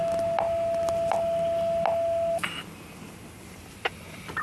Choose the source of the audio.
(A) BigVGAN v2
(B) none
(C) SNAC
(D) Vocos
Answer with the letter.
B